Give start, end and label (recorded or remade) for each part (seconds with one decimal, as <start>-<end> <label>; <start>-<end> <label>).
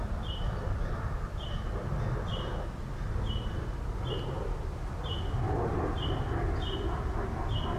0.0-7.8 recorded